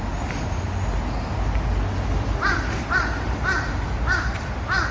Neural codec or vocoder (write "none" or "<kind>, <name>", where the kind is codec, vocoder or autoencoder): none